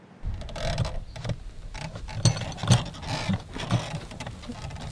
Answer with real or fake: real